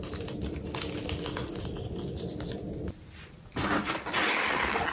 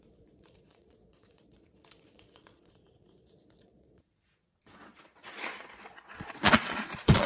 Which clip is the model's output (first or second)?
second